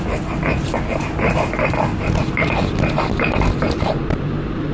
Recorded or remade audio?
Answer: recorded